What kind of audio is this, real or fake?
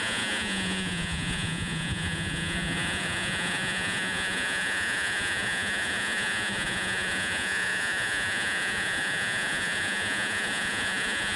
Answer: fake